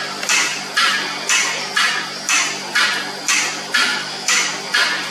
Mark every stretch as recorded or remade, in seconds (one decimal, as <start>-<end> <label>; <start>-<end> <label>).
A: 0.0-3.9 recorded; 3.9-4.5 remade; 4.5-5.1 recorded